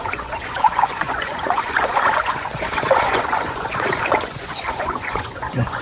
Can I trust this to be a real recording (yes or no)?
no